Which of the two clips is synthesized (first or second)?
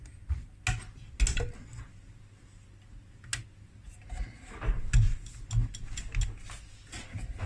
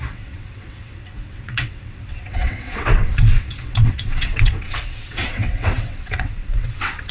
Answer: second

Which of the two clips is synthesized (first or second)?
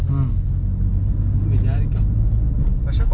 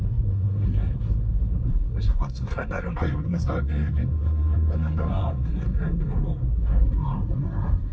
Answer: second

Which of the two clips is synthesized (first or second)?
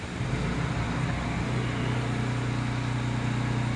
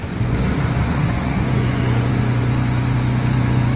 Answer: second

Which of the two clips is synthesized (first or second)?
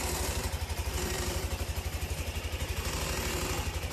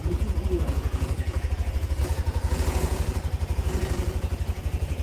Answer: second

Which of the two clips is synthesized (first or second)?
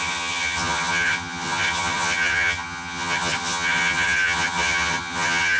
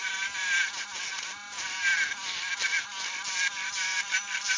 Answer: first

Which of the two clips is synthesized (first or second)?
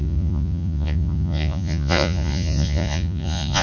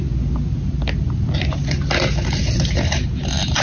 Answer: first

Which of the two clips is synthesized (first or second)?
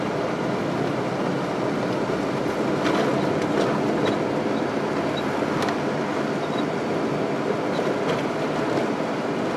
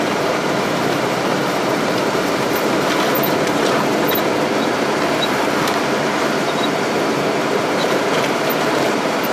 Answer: second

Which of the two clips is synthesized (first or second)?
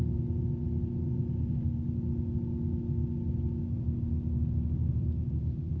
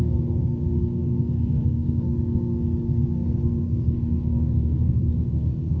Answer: second